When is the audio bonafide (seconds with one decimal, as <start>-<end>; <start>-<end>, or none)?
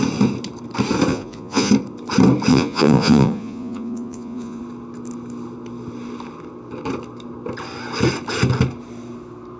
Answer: 0.0-1.1; 1.7-2.5; 4.6-9.6